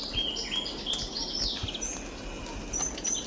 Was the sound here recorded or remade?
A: recorded